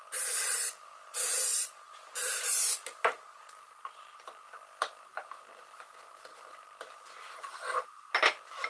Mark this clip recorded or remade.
recorded